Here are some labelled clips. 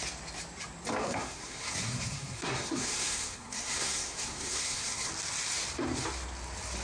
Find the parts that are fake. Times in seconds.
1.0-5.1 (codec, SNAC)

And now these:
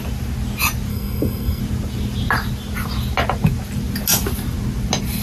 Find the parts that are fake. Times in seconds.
0.9-1.6 (codec, SNAC)

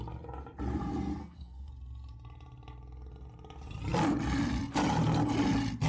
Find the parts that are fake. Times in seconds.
1.2-1.7 (codec, SNAC)

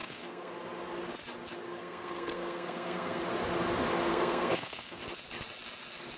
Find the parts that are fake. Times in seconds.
0.0-0.5 (codec, SNAC); 1.7-3.2; 4.1-5.0

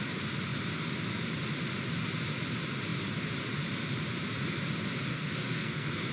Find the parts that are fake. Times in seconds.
5.1-6.1 (codec, SNAC)

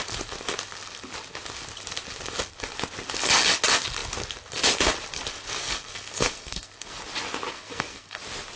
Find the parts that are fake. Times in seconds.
5.6-7.0 (codec, SNAC); 7.5-8.2